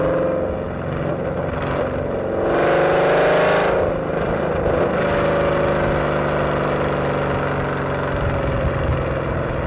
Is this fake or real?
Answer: real